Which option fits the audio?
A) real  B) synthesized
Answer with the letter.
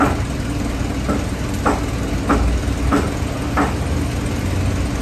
A